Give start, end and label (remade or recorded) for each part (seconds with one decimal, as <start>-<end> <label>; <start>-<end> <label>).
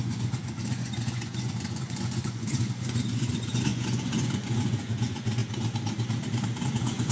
0.0-5.4 remade; 5.4-6.6 recorded; 6.6-7.1 remade